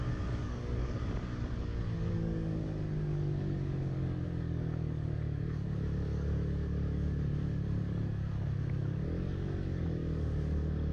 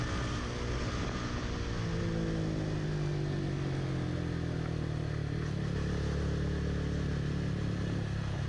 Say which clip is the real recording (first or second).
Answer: second